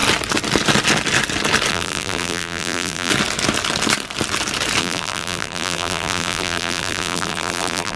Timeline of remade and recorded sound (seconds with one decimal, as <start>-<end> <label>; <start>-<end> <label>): 0.0-1.7 recorded; 1.7-3.1 remade; 3.1-4.8 recorded; 4.8-8.0 remade